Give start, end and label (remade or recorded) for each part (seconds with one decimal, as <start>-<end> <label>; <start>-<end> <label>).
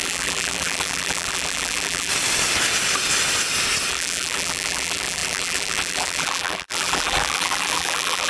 0.0-2.1 remade; 2.1-3.9 recorded; 3.9-8.3 remade